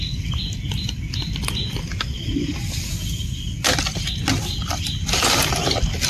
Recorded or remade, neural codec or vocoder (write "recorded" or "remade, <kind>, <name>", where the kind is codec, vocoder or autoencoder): recorded